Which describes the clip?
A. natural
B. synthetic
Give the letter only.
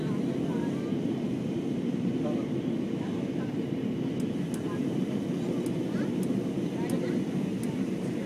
A